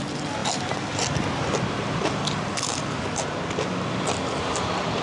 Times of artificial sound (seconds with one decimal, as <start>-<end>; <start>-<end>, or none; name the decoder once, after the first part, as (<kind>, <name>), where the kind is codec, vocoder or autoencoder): none